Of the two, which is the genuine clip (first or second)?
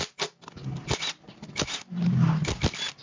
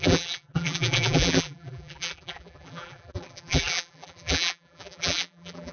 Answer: first